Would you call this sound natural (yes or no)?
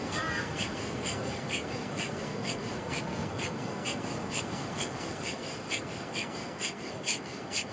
no